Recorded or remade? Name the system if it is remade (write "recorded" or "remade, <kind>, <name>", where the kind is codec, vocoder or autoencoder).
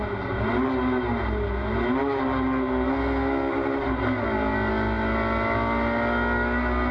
recorded